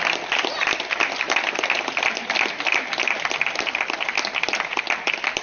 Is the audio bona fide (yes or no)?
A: yes